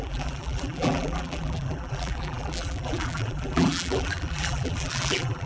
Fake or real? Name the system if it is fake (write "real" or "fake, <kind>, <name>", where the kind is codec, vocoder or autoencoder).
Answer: fake, vocoder, BigVGAN v2